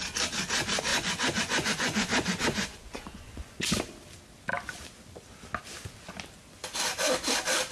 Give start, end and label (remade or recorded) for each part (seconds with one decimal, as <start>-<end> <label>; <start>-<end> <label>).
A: 0.0-0.9 recorded; 0.9-3.8 remade; 3.8-7.7 recorded